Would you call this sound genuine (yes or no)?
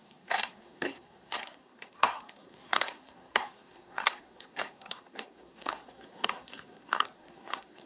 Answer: no